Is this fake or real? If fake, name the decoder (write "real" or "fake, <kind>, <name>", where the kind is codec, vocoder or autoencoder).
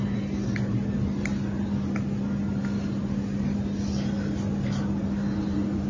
real